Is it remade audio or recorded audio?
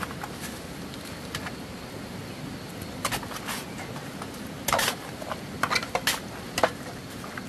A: recorded